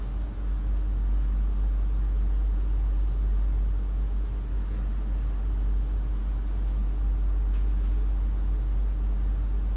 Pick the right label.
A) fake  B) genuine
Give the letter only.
B